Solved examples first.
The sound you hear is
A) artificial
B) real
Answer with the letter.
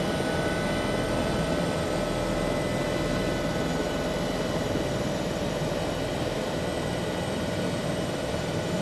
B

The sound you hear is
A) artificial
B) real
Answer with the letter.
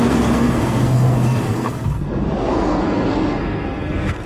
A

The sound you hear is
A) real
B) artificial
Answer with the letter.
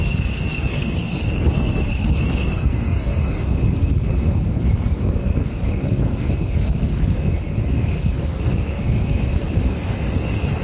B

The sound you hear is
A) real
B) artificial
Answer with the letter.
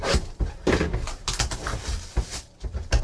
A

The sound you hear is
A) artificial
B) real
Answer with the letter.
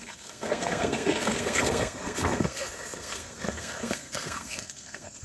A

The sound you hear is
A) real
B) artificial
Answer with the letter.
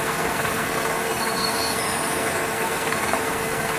B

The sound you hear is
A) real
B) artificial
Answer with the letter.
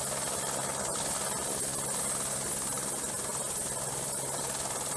A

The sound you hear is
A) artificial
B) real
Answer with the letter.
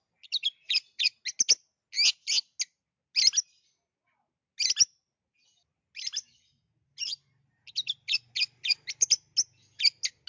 B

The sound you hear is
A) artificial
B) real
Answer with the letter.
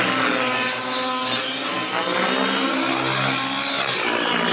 B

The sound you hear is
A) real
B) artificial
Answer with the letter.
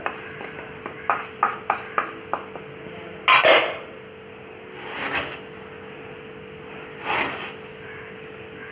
A